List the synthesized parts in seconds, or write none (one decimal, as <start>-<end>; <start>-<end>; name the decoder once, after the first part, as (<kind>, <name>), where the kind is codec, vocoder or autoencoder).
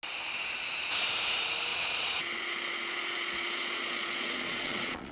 1.7-5.1 (vocoder, Vocos)